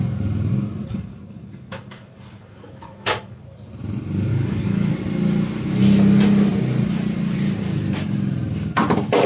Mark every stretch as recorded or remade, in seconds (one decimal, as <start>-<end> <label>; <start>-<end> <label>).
0.0-0.9 recorded; 0.9-3.4 remade; 3.4-4.3 recorded; 4.3-4.9 remade; 4.9-9.3 recorded